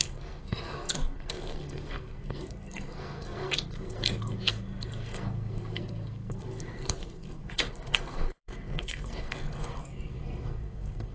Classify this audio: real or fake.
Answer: fake